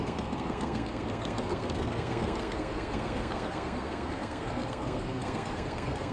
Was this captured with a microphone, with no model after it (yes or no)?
no